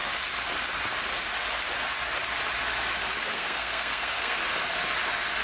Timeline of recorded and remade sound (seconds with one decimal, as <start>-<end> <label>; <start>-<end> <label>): 0.0-3.2 recorded; 3.2-4.4 remade; 4.4-5.4 recorded